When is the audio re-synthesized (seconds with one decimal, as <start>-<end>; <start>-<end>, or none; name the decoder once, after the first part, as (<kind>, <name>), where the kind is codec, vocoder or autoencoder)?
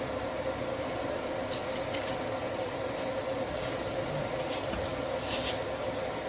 none